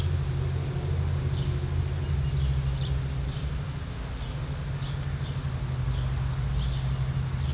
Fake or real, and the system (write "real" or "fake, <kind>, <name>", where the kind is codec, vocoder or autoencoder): real